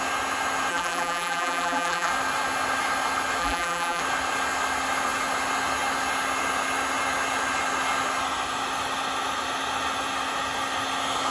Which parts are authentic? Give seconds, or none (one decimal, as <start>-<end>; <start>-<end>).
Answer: 0.0-0.7; 2.1-3.4; 4.0-11.3